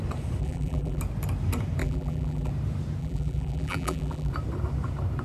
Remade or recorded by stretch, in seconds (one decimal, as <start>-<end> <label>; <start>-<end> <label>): 0.0-0.4 recorded; 0.4-1.0 remade; 1.0-1.8 recorded; 1.8-2.5 remade; 2.5-3.0 recorded; 3.0-4.3 remade; 4.3-5.2 recorded